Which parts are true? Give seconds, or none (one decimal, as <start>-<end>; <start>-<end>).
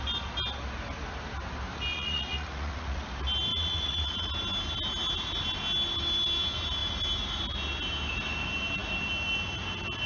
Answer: 0.0-1.9; 3.0-3.5; 4.3-10.1